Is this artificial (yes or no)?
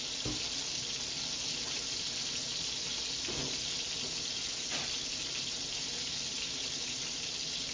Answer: no